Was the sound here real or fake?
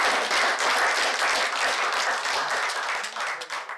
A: real